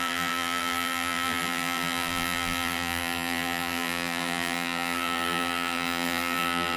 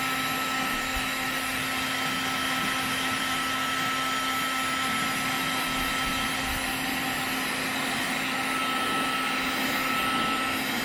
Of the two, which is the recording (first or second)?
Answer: second